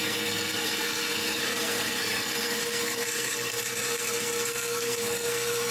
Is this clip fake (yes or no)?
yes